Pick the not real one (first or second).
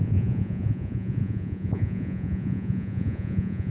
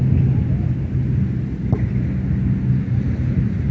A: first